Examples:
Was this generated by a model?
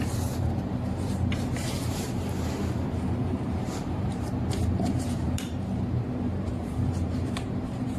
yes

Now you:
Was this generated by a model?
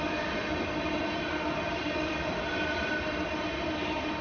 yes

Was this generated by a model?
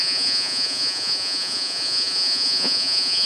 yes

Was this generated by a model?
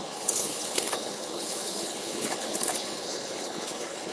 yes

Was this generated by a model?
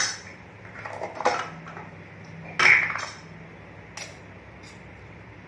no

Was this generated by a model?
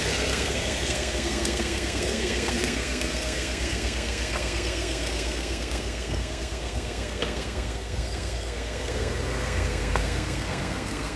yes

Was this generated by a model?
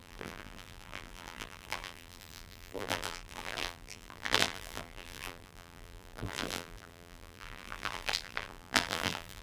yes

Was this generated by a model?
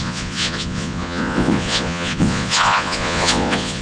yes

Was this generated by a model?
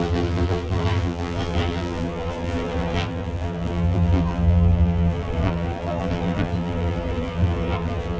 yes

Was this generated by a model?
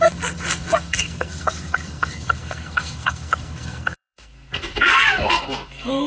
yes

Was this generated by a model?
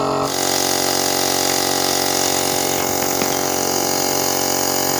no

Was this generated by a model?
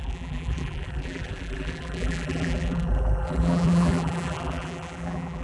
yes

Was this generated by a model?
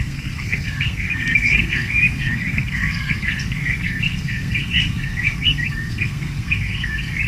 yes